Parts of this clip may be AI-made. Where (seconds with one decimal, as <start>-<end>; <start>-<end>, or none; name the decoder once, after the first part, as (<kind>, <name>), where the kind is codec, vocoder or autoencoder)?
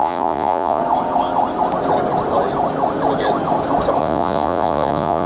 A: 0.0-0.8 (vocoder, Vocos); 4.0-5.3